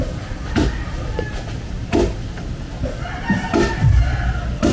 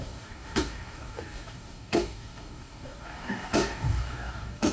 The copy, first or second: second